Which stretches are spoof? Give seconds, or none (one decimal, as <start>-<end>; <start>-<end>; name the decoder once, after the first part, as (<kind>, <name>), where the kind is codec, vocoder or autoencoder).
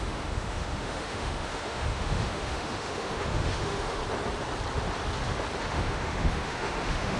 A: 0.0-4.0 (autoencoder, DAC-VAE); 5.6-7.2